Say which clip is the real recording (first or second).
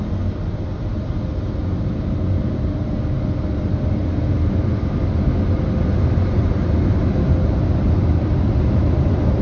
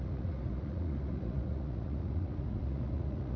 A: first